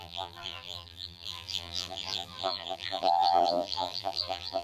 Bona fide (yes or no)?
no